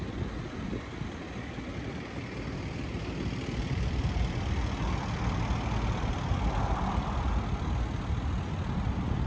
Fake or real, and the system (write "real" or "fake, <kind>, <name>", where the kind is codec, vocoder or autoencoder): real